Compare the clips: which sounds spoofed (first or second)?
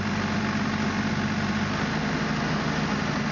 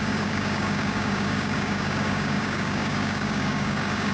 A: second